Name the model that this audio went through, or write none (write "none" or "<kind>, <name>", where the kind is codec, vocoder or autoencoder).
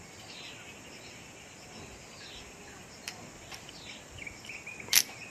vocoder, BigVGAN v2